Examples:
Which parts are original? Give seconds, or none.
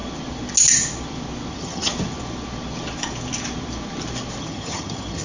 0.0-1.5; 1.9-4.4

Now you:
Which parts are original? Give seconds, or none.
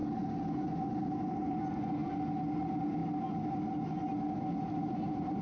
0.0-5.4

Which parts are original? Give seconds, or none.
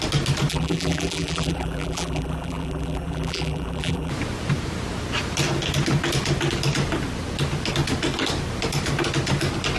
0.0-0.5; 4.1-9.8